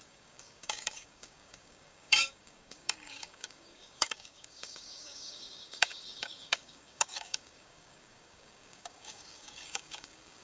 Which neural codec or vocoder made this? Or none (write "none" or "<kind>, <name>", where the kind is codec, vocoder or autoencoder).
codec, DAC